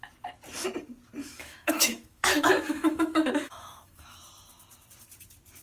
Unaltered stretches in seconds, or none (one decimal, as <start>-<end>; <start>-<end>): 0.0-1.2; 4.2-5.6